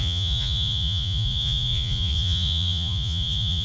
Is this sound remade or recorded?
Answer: remade